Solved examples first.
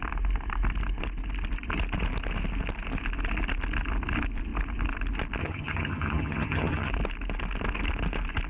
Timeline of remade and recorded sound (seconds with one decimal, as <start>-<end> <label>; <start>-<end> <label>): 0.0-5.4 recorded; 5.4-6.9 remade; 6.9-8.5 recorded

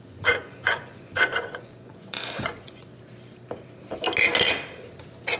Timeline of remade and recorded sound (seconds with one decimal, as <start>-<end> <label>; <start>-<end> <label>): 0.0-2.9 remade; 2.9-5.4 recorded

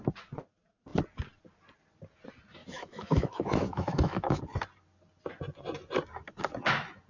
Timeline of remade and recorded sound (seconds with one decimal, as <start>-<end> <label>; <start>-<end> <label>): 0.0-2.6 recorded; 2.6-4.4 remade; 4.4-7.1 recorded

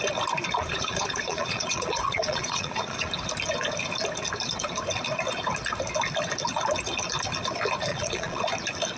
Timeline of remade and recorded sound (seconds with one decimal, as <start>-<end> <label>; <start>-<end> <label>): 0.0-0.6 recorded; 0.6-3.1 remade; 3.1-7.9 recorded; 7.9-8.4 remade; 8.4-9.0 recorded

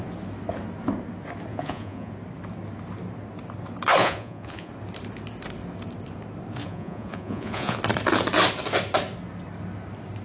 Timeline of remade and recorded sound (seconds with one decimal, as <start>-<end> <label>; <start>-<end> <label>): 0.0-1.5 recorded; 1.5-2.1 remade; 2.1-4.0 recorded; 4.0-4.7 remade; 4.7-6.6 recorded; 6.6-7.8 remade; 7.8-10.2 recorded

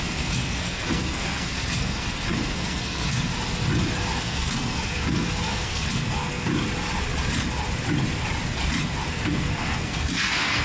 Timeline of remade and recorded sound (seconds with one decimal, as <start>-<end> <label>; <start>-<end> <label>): 0.0-3.3 remade; 3.3-4.2 recorded; 4.2-6.5 remade; 6.5-9.1 recorded; 9.1-10.6 remade